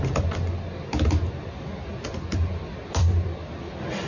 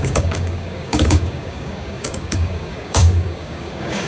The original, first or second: first